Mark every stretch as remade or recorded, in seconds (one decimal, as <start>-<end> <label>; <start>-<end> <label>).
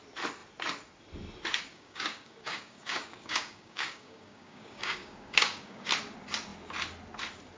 0.0-1.7 recorded; 1.7-5.9 remade; 5.9-7.6 recorded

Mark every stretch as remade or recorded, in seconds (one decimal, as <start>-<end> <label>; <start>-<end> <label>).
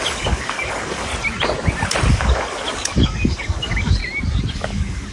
0.0-1.1 remade; 1.1-2.1 recorded; 2.1-4.0 remade; 4.0-4.5 recorded; 4.5-5.1 remade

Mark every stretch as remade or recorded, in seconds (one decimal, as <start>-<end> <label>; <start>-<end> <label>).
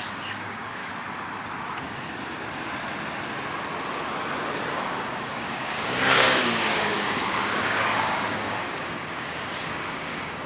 0.0-0.8 remade; 0.8-4.8 recorded; 4.8-10.5 remade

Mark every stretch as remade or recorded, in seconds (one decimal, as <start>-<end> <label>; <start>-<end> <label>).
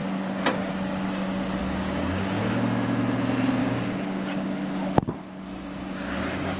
0.0-1.6 recorded; 1.6-2.4 remade; 2.4-3.6 recorded; 3.6-6.6 remade